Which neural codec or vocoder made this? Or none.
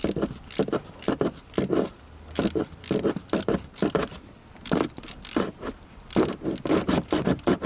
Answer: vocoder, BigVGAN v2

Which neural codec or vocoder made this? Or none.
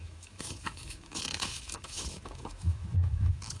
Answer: autoencoder, DAC-VAE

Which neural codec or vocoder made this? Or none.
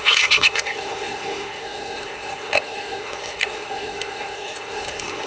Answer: codec, SNAC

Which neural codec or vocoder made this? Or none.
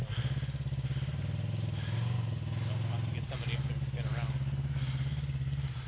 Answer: none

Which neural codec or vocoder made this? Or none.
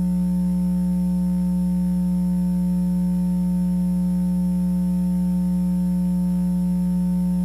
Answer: none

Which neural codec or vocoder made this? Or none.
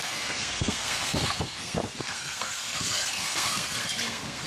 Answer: codec, SNAC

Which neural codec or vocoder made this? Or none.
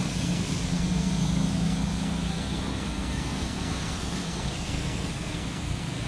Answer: codec, SNAC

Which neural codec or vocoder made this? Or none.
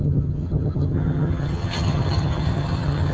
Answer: vocoder, HiFi-GAN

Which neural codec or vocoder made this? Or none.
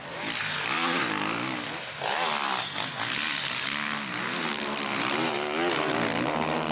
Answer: none